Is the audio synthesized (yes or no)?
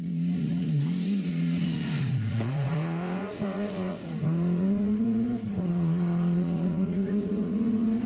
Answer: yes